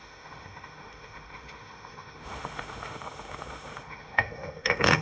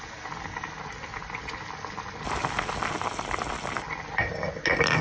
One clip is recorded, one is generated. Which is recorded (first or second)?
second